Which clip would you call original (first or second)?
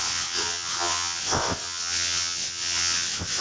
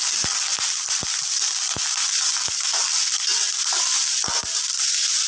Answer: second